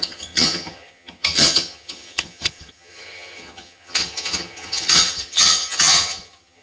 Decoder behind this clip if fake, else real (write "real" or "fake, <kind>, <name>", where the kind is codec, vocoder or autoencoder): fake, vocoder, HiFi-GAN